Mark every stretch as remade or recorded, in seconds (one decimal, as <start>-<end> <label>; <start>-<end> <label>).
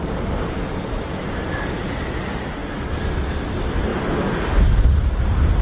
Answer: 0.0-5.6 recorded